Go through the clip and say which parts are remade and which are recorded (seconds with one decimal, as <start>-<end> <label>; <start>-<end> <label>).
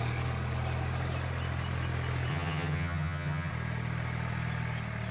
0.0-2.3 recorded; 2.3-3.5 remade; 3.5-5.1 recorded